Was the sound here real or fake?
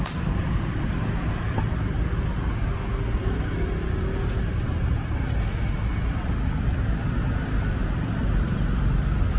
real